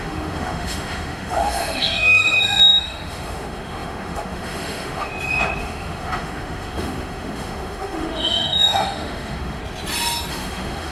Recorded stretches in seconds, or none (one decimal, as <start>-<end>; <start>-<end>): 5.1-5.6; 9.6-10.3